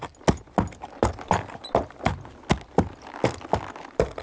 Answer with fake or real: real